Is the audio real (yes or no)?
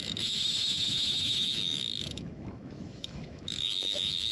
no